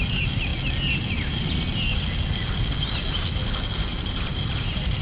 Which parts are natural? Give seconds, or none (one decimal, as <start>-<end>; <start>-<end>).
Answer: 0.0-3.9